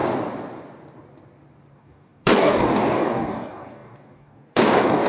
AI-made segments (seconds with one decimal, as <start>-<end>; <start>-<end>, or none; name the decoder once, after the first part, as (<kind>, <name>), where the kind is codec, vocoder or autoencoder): 1.7-5.1 (codec, DAC)